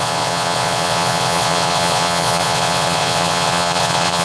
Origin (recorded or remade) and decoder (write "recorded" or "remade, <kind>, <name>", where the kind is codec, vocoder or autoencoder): remade, vocoder, Vocos